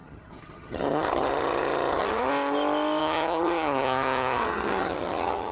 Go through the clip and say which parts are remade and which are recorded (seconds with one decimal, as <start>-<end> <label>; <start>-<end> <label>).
0.0-2.3 remade; 2.3-3.0 recorded; 3.0-5.5 remade